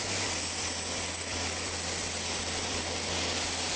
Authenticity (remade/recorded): recorded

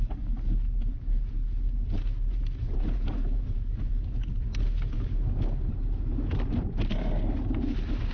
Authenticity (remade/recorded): recorded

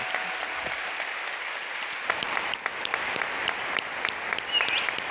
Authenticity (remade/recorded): recorded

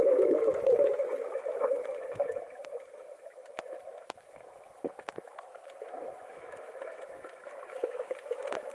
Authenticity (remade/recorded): remade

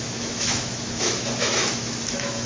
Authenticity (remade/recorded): remade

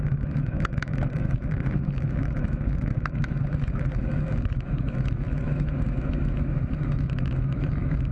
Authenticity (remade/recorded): remade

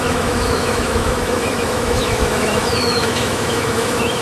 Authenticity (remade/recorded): remade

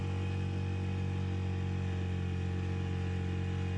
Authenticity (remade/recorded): recorded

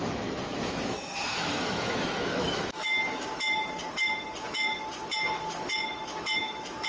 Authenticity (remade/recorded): remade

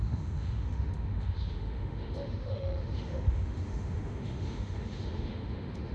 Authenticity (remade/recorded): remade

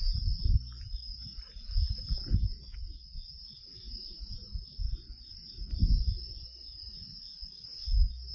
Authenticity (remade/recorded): recorded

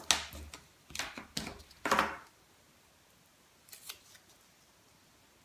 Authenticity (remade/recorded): recorded